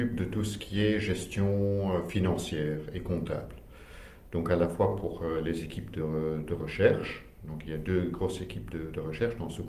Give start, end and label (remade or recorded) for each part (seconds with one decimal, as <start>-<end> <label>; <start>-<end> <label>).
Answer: 0.0-4.9 recorded; 4.9-6.0 remade; 6.0-9.7 recorded